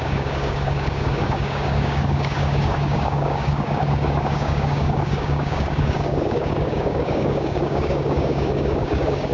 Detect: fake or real fake